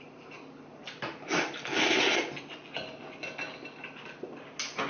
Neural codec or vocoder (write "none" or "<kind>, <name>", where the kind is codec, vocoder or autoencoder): none